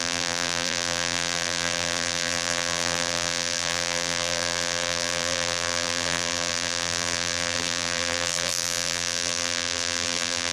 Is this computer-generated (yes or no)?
yes